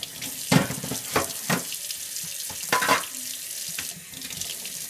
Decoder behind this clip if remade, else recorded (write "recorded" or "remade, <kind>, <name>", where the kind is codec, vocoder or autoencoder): recorded